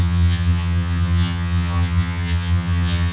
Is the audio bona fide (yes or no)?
no